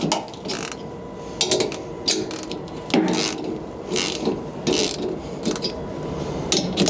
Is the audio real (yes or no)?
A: yes